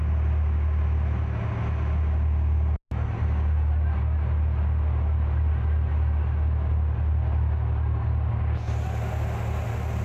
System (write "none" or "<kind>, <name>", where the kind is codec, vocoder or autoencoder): none